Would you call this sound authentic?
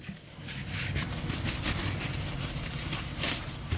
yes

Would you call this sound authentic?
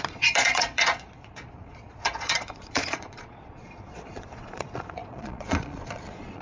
no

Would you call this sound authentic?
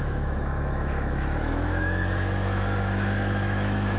no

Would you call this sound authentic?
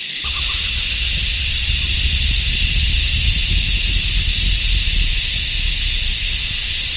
yes